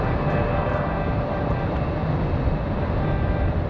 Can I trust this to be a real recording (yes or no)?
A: yes